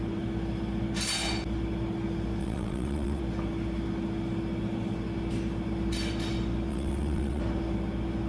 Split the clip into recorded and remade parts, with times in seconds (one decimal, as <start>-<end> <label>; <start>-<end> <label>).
0.0-2.4 recorded; 2.4-3.2 remade; 3.2-6.7 recorded; 6.7-7.4 remade; 7.4-8.3 recorded